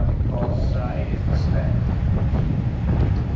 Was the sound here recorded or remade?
recorded